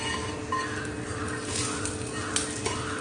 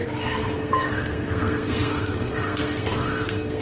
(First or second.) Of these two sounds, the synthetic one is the second